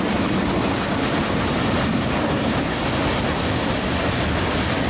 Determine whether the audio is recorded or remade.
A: recorded